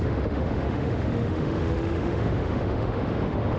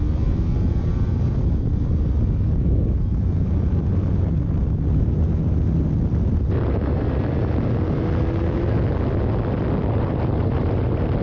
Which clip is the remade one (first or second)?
first